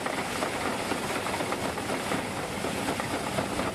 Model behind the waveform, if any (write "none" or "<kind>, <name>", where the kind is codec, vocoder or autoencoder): none